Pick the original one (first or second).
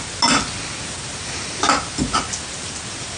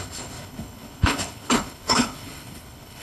first